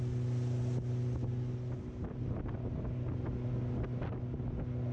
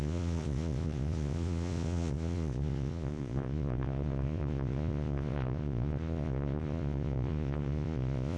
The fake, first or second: second